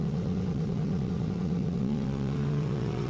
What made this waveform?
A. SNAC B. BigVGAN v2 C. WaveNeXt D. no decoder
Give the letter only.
C